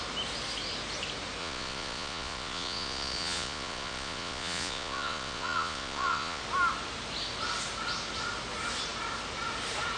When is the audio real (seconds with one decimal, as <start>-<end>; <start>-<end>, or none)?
0.0-1.4; 6.4-10.0